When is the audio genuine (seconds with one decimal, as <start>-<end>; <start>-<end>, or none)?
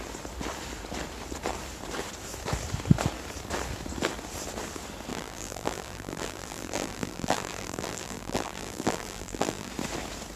0.0-5.1; 9.7-10.4